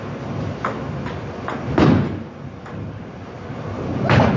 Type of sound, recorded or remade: recorded